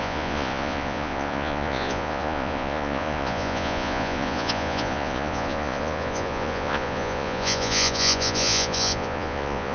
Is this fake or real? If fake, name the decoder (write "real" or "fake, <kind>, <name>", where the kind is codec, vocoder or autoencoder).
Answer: fake, vocoder, Vocos